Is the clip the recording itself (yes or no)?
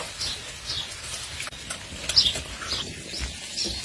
yes